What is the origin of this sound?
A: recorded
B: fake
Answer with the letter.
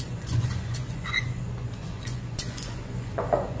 B